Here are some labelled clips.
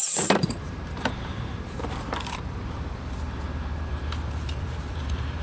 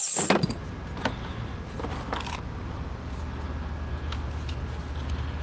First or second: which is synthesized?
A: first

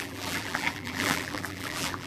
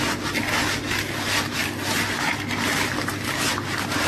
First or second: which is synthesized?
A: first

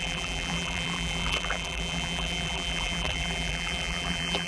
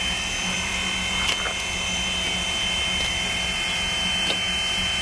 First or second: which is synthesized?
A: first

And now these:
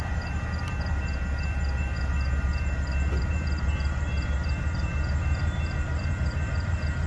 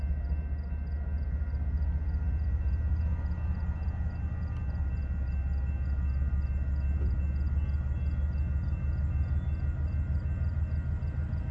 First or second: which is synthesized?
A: first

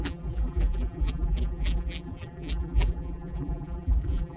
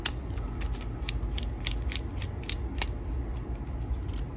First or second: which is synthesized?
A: first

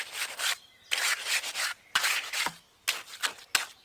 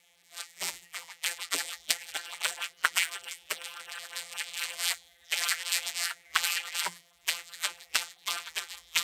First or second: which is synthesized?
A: second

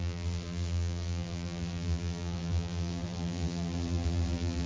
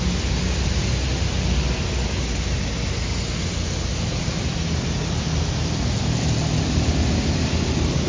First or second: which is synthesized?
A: first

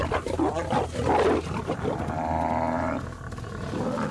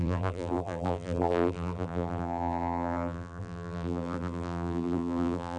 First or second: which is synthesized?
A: second